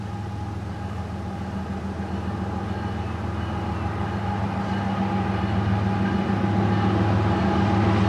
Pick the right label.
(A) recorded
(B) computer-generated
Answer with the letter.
A